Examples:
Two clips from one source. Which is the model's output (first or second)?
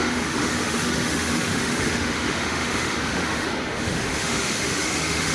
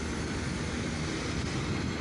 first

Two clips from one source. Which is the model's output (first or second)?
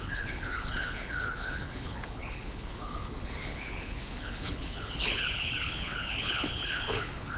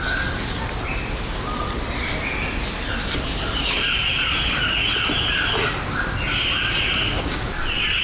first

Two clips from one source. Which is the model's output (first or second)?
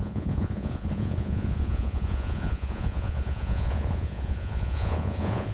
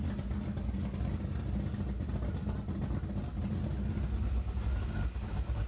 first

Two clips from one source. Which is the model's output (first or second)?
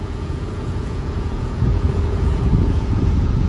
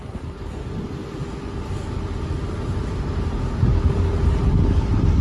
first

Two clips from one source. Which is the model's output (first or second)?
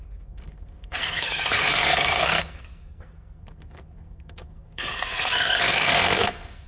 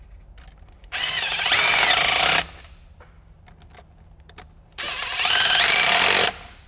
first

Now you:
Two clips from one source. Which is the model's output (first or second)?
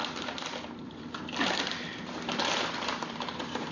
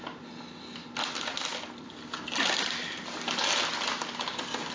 first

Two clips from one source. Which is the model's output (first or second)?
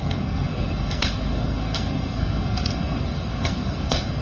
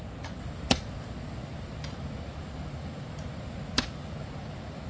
first